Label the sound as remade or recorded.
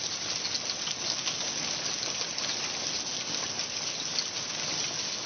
recorded